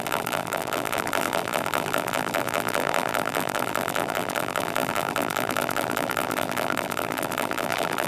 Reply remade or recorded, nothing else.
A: remade